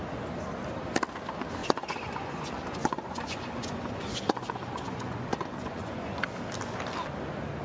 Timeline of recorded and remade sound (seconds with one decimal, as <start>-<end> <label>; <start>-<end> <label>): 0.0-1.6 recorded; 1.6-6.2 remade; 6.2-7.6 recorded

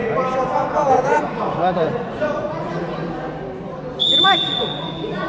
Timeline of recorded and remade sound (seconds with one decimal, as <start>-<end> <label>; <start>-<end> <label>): 0.0-0.9 recorded; 0.9-3.0 remade; 3.0-4.2 recorded; 4.2-5.3 remade

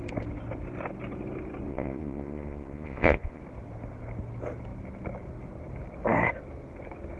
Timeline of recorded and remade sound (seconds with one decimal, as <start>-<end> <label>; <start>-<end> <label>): 0.0-1.7 recorded; 1.7-3.4 remade; 3.4-7.2 recorded

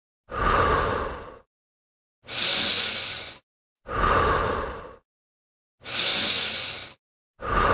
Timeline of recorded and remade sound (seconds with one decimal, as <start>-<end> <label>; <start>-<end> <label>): 0.0-2.5 recorded; 2.5-3.8 remade; 3.8-6.1 recorded; 6.1-6.7 remade; 6.7-7.7 recorded

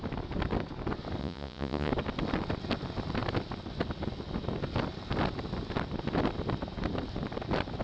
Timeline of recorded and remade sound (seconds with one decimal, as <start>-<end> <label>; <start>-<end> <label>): 0.0-1.2 recorded; 1.2-1.9 remade; 1.9-7.8 recorded

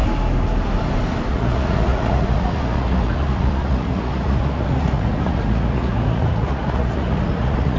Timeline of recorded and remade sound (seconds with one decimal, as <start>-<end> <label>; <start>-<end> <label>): 0.0-1.3 recorded; 1.3-7.8 remade